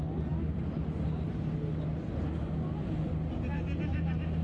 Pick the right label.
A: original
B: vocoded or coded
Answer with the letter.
A